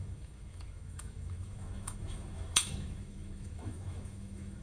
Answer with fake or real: fake